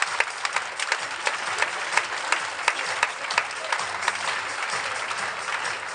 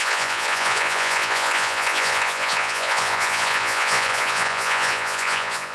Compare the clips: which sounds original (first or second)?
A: first